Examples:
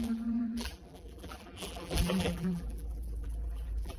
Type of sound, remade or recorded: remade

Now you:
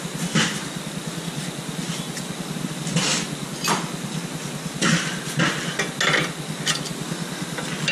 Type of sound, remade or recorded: recorded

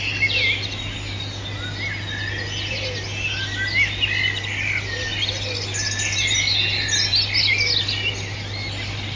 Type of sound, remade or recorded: recorded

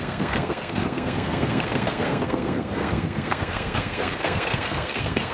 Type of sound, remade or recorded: remade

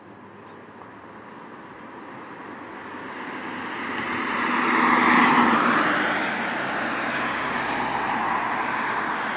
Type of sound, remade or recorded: recorded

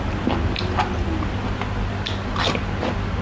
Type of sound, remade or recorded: recorded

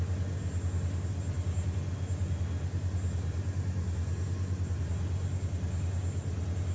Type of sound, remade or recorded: recorded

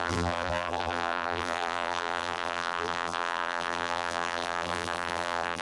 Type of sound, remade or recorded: remade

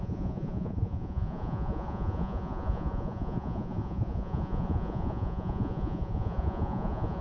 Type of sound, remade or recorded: remade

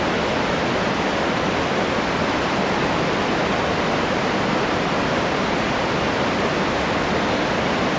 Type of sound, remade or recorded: recorded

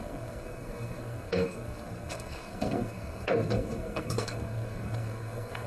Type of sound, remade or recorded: remade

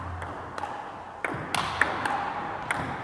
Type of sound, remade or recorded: recorded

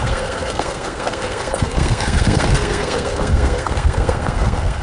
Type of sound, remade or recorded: remade